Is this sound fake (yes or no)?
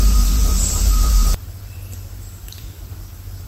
yes